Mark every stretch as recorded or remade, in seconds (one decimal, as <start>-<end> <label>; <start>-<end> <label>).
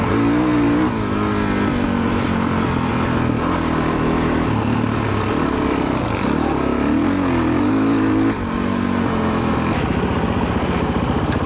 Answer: 0.0-11.5 recorded